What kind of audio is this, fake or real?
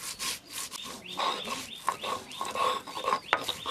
real